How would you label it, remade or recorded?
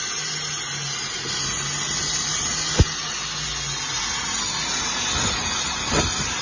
recorded